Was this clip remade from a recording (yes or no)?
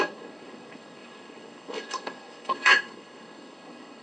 yes